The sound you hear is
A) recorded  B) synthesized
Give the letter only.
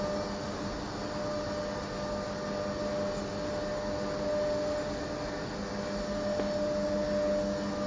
A